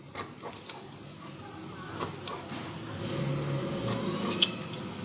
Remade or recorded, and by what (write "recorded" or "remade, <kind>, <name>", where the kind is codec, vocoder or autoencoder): recorded